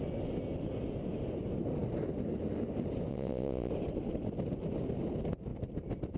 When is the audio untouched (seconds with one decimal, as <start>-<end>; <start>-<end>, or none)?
0.0-3.1; 3.7-6.2

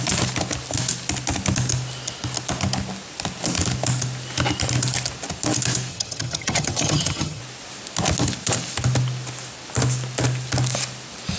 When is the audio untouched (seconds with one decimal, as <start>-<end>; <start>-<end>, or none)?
0.0-5.9; 7.4-11.4

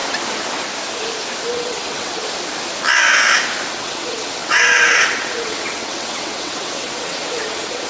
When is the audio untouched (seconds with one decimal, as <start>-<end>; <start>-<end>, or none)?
0.0-1.5; 2.2-3.7

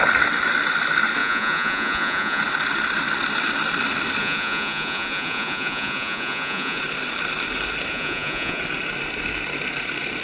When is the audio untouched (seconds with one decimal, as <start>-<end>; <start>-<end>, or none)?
0.0-1.2; 2.4-4.2; 6.8-7.9; 8.6-10.2

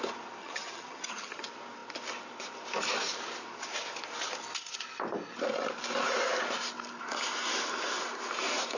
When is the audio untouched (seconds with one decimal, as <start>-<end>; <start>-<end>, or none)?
0.0-0.4; 1.4-8.8

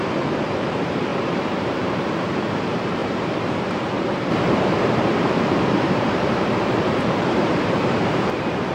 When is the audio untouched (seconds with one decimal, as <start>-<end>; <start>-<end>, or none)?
none

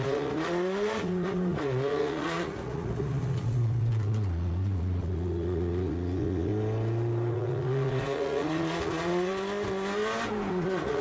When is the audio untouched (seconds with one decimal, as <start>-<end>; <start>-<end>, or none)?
6.5-7.3; 9.3-10.5